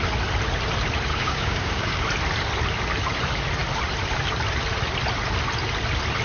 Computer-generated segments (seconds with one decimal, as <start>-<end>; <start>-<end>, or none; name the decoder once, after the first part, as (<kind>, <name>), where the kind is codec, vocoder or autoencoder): 1.1-2.0 (codec, DAC)